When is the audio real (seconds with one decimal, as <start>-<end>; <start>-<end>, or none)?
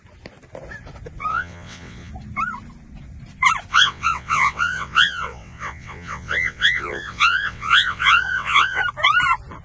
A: 0.0-1.3; 2.1-3.7; 8.8-9.6